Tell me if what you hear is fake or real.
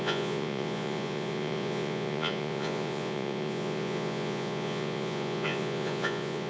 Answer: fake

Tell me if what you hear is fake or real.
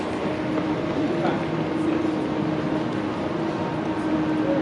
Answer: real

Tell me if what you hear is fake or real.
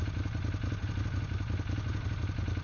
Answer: real